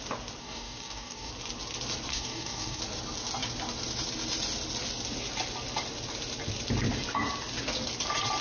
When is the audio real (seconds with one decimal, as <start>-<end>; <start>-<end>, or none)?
0.0-0.4; 1.3-2.1; 2.8-8.4